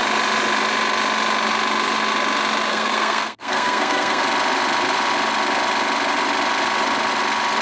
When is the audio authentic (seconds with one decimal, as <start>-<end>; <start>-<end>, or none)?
0.0-2.7; 4.2-7.6